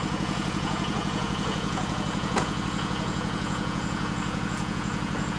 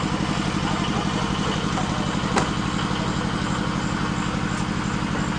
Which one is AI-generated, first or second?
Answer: first